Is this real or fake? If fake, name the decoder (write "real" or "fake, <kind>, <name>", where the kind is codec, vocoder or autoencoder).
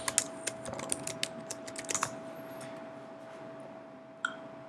real